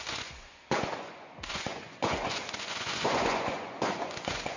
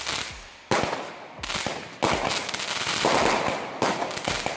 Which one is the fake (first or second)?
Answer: first